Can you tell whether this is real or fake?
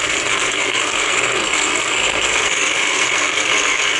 fake